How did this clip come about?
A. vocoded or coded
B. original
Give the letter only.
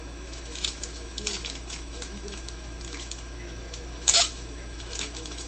A